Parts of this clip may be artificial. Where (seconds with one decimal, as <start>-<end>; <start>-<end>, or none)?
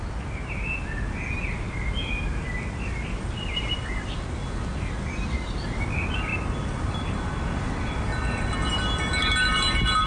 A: 6.3-7.2